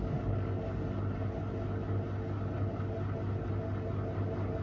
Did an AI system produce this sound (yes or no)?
no